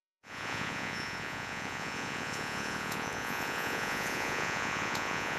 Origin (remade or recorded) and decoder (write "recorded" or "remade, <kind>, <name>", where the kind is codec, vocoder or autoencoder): remade, vocoder, Vocos